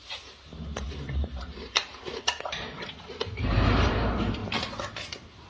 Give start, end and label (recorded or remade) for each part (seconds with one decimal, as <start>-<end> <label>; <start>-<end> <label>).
0.0-4.4 remade; 4.4-5.5 recorded